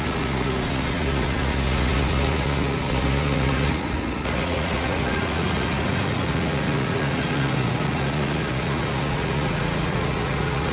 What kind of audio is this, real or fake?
fake